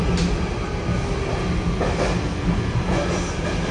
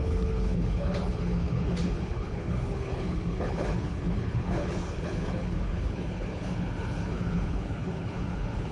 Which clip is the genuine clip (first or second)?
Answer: first